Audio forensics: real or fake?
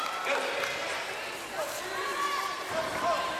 real